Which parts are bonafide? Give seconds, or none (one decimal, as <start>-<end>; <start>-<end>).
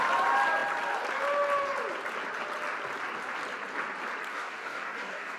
0.0-4.3